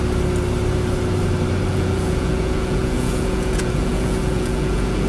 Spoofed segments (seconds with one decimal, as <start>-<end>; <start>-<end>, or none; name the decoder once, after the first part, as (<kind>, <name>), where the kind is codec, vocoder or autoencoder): 1.7-5.1 (vocoder, Vocos)